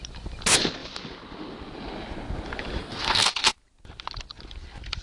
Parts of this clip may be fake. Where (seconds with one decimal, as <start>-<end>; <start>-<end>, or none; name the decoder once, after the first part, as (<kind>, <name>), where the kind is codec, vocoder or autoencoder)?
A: 2.8-3.6 (codec, SNAC)